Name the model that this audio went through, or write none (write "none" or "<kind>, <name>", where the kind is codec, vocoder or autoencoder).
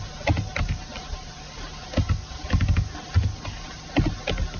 none